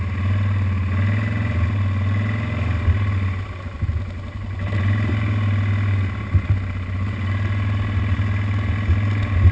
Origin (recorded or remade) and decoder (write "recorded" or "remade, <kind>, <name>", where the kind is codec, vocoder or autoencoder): recorded